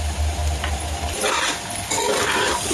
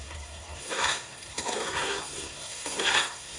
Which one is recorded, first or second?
first